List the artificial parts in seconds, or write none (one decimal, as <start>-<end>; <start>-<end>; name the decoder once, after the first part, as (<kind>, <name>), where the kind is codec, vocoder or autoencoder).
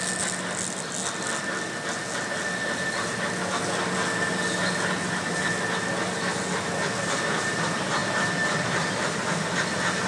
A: none